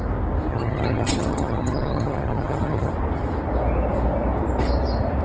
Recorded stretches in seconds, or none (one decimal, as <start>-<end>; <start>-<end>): 0.0-0.5; 2.9-5.2